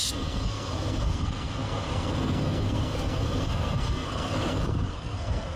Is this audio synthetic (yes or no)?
yes